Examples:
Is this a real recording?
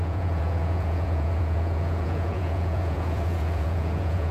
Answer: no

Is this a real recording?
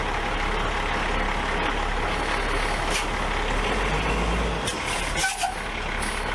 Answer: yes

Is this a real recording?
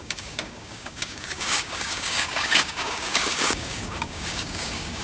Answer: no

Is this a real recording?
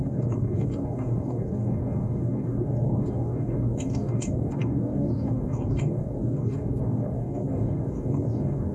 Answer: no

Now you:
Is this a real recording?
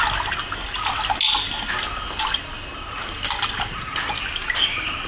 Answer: yes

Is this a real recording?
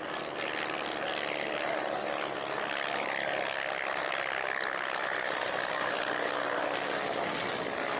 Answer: yes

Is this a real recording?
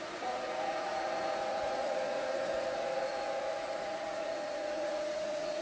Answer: no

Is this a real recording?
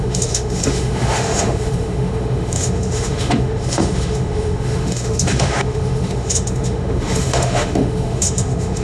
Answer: no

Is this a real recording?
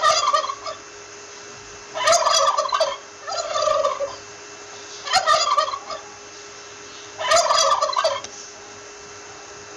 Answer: yes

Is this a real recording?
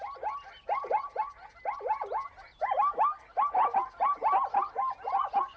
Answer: yes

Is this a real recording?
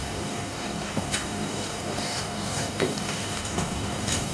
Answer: no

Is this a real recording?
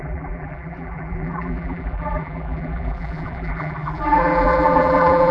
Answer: no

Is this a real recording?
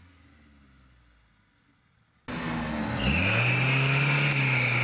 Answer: yes